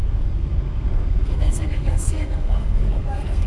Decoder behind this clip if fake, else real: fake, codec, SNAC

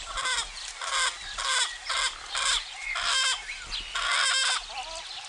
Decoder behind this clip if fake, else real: real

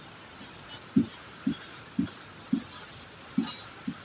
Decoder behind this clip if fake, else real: real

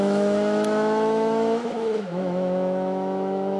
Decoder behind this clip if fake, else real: fake, autoencoder, DAC-VAE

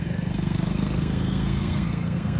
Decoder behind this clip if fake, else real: fake, codec, SNAC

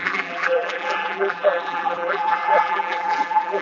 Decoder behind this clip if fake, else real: fake, vocoder, BigVGAN v2